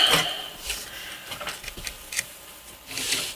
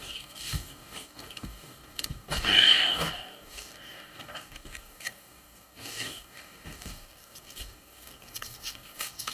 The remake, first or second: second